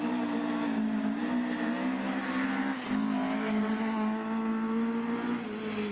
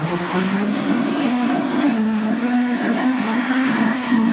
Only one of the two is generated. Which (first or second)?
second